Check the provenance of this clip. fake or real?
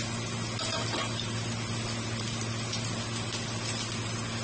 real